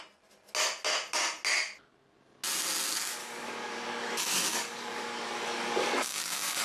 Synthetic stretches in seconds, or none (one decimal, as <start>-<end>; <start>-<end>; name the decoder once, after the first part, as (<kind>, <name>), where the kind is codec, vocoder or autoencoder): 3.2-6.6 (codec, DAC)